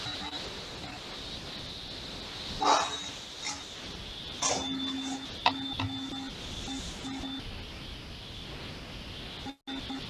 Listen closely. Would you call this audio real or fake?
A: real